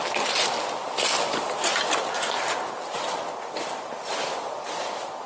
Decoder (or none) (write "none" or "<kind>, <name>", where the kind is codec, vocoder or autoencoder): none